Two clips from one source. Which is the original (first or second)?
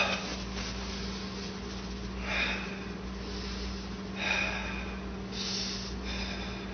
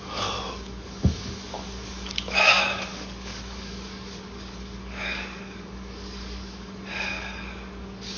first